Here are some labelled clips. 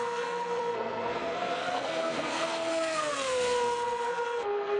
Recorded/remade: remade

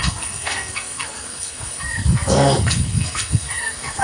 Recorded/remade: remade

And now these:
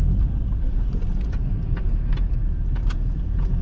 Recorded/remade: remade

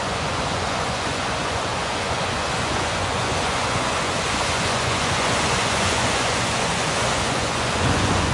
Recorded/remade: remade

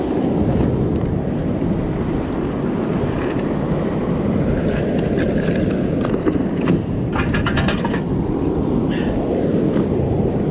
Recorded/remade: recorded